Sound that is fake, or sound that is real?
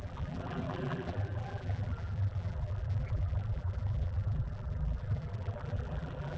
fake